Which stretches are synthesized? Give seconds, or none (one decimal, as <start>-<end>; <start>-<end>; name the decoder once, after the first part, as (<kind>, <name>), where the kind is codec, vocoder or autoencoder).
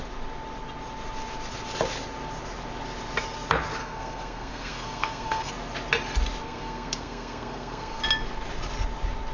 3.8-5.5 (codec, SNAC); 6.4-8.0